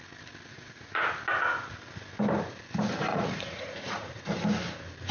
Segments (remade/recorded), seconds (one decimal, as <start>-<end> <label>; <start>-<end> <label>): 0.0-0.5 recorded; 0.5-1.1 remade; 1.1-3.1 recorded; 3.1-4.3 remade; 4.3-5.1 recorded